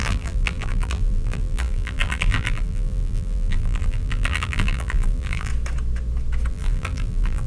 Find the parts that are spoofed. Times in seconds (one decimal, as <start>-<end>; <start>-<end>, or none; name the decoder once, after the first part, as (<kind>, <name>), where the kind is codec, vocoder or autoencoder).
0.0-5.5 (vocoder, BigVGAN v2); 6.5-7.5